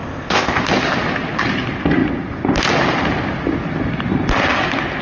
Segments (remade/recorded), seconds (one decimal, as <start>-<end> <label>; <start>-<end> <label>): 0.0-0.6 remade; 0.6-5.0 recorded